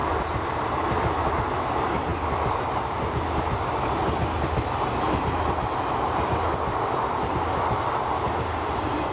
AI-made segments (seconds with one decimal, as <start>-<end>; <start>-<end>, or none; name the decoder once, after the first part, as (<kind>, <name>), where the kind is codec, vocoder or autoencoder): none